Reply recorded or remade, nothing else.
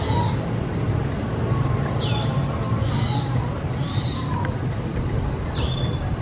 recorded